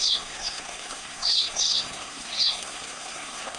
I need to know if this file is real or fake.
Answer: fake